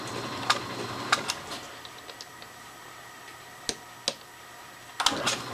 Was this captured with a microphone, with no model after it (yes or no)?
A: yes